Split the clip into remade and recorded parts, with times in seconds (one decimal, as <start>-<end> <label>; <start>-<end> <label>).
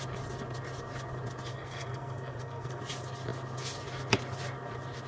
0.0-1.5 recorded; 1.5-2.8 remade; 2.8-5.1 recorded